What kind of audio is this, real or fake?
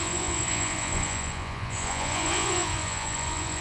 fake